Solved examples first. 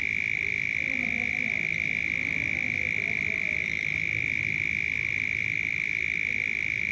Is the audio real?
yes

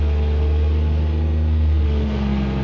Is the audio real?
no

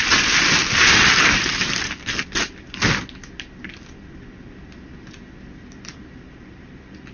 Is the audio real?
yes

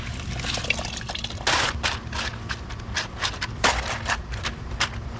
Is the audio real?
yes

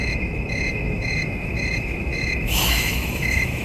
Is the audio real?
no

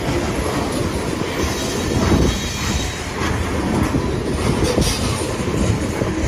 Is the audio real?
yes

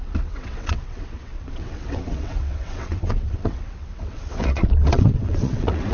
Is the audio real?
no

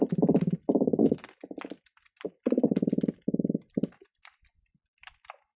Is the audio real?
yes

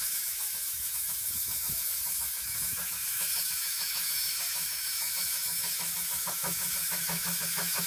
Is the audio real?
no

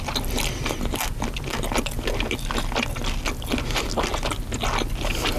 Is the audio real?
yes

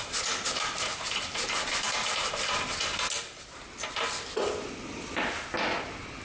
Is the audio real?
yes